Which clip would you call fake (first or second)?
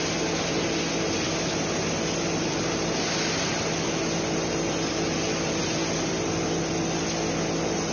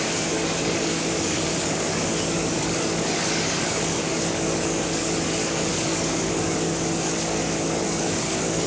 second